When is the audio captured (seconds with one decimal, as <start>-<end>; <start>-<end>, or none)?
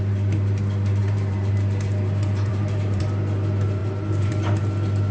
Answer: 0.0-1.0; 1.5-2.5; 3.0-3.8; 4.3-5.1